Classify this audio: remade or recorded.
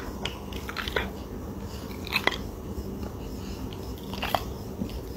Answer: recorded